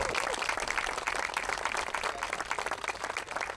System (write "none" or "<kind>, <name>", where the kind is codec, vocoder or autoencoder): none